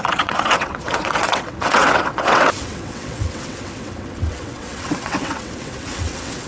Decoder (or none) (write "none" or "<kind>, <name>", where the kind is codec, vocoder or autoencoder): vocoder, WaveNeXt